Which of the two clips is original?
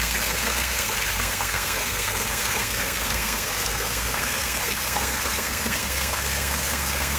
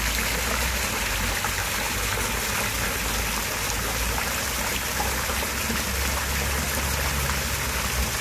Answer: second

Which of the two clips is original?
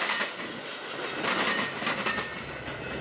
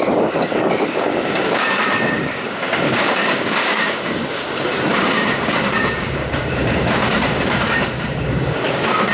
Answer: first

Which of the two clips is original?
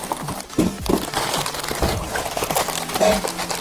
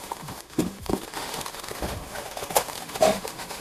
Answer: first